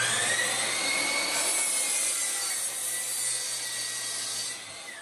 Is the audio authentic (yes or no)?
yes